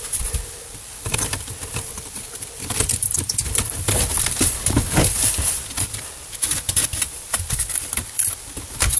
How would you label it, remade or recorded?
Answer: remade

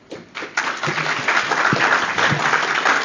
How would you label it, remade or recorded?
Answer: recorded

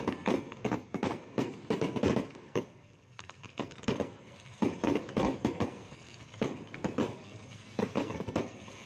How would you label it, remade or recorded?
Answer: remade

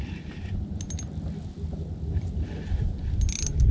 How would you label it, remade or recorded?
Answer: recorded